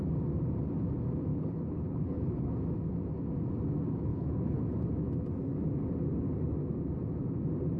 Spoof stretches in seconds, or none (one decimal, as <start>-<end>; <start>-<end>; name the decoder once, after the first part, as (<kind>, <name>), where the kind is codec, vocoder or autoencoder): 1.3-2.5 (codec, HILCodec); 4.1-4.6